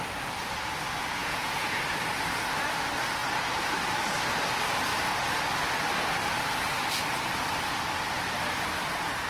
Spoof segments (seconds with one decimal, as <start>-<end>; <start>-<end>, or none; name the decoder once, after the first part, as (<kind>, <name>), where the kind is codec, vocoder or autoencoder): 1.2-1.8 (vocoder, Vocos)